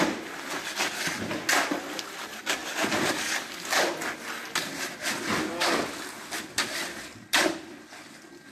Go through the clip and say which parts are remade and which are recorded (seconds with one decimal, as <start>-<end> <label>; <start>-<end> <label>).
0.0-8.5 recorded